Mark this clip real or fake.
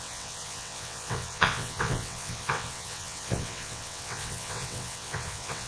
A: fake